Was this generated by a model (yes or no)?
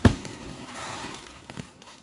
yes